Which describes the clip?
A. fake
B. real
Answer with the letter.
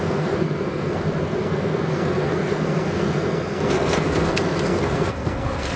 A